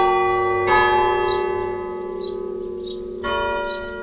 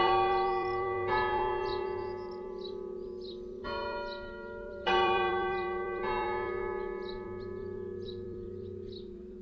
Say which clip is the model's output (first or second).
second